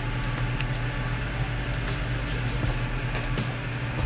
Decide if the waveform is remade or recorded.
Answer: recorded